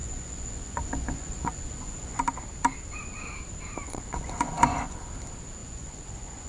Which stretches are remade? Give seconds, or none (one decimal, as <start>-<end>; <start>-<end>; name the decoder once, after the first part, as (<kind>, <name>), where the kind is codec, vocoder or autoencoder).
0.0-2.2 (vocoder, Vocos); 3.8-5.0; 5.6-6.5